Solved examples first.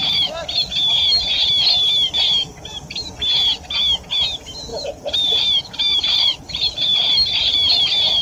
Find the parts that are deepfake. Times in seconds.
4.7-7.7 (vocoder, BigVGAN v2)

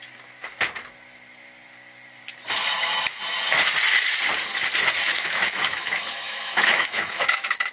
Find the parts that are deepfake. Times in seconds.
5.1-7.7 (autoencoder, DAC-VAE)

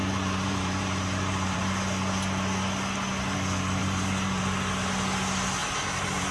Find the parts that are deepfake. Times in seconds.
0.0-1.7 (vocoder, BigVGAN v2); 3.8-4.4; 5.6-6.3

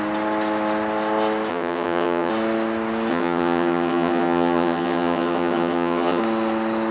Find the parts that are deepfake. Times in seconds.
1.5-2.3 (vocoder, HiFi-GAN); 3.1-6.2

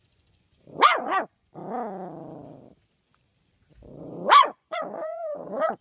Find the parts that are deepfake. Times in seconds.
0.0-1.6 (vocoder, Vocos); 4.0-5.8

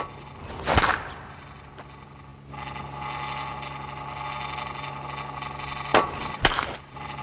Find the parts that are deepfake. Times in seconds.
5.9-7.2 (vocoder, BigVGAN v2)

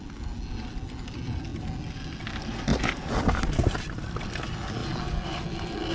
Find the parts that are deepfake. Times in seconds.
none